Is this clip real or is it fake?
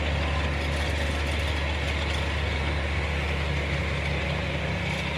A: real